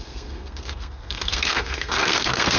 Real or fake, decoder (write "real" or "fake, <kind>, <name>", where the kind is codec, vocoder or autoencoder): fake, codec, SNAC